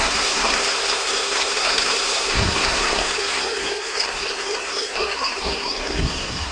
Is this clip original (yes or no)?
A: no